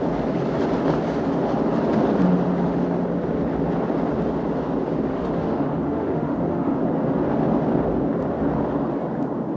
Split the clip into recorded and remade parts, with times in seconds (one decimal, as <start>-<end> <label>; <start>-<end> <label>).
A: 0.0-5.1 recorded; 5.1-6.8 remade; 6.8-9.6 recorded